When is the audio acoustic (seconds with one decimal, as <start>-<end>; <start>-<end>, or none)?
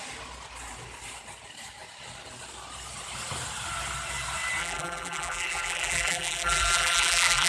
0.0-4.6